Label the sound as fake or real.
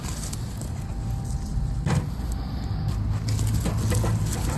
real